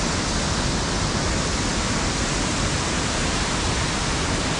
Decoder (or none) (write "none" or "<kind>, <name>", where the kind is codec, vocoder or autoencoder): none